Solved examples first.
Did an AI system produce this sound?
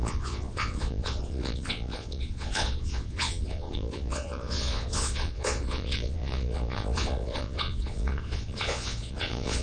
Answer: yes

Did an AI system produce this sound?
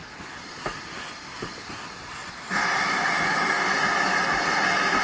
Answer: no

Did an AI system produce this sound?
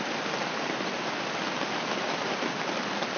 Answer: no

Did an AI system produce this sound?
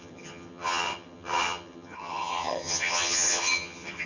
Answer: yes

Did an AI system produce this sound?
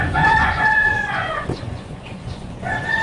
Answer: yes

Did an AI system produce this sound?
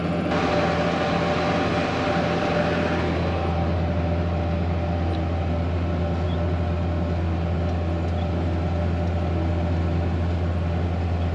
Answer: no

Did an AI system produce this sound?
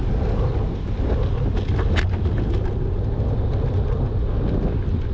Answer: no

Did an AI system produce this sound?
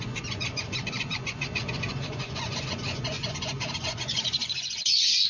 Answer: yes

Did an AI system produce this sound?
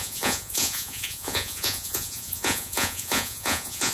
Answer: yes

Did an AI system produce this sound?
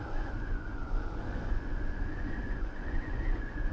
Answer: yes